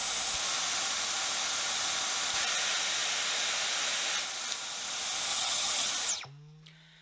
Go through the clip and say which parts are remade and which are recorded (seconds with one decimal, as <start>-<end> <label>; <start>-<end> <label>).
0.0-5.3 recorded; 5.3-5.9 remade; 5.9-7.0 recorded